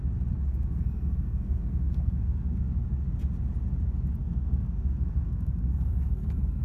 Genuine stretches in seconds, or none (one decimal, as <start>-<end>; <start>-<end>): 0.0-0.5; 2.6-4.2